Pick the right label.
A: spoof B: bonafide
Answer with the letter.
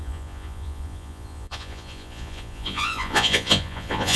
A